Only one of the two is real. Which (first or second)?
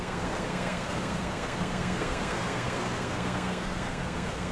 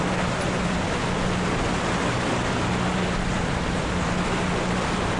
second